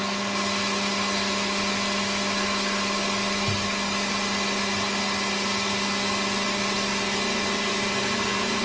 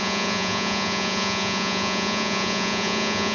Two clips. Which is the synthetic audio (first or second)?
second